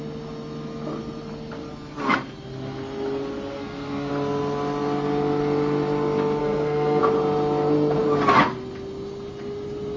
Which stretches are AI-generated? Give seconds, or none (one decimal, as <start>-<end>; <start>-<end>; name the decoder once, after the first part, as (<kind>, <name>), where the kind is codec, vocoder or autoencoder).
3.5-4.1 (codec, SNAC); 6.4-7.0